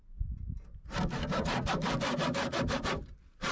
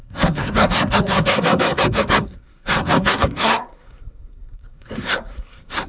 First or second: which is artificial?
second